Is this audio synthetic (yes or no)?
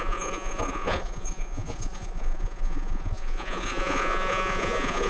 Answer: yes